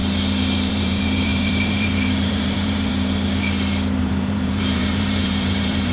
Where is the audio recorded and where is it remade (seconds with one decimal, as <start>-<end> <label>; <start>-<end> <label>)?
0.0-0.7 recorded; 0.7-2.9 remade; 2.9-4.0 recorded; 4.0-5.9 remade